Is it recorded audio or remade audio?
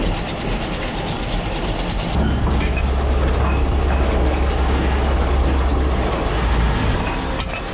recorded